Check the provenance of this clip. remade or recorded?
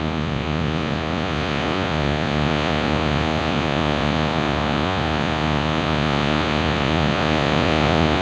remade